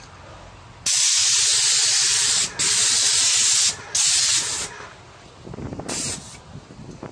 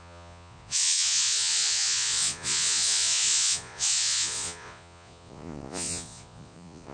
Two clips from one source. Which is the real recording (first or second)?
first